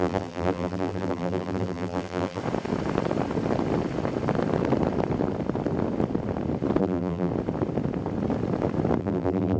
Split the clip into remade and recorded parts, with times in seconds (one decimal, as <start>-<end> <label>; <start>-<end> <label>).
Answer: 0.0-2.4 remade; 2.4-6.8 recorded; 6.8-7.3 remade; 7.3-9.0 recorded; 9.0-9.6 remade